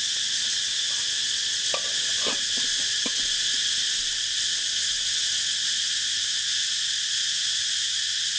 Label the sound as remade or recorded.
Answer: recorded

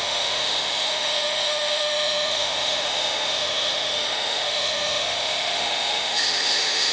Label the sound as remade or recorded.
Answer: remade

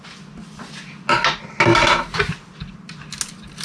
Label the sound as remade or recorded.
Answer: recorded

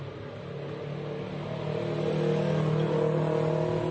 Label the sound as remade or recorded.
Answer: recorded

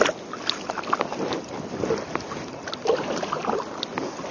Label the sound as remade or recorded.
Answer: recorded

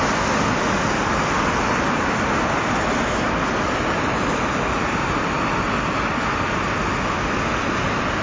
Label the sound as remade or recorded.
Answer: recorded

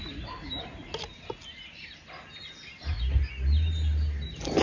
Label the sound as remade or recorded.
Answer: recorded